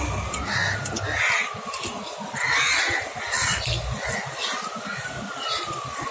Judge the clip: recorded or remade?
recorded